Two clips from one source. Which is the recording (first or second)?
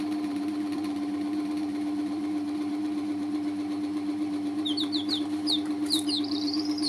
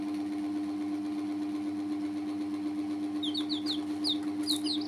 second